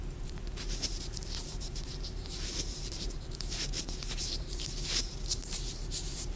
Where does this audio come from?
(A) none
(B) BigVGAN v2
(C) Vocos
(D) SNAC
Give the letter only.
B